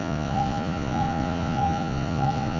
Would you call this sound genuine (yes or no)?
no